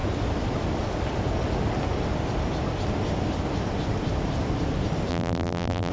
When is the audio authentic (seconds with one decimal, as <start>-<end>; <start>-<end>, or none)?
0.0-5.1